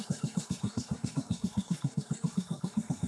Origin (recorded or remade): remade